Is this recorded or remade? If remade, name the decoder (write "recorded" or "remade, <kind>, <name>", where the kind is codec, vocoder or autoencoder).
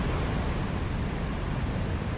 remade, vocoder, BigVGAN v2